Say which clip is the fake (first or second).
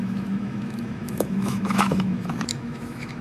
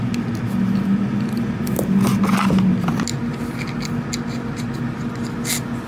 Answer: first